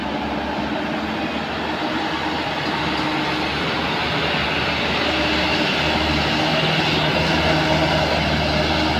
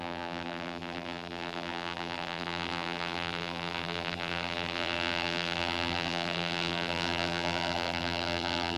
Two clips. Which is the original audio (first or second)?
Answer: first